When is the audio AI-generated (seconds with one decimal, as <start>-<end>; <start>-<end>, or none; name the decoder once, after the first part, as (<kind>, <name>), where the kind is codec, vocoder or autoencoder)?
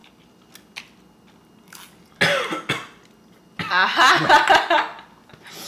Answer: none